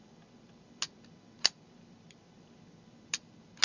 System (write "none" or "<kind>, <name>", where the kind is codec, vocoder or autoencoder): none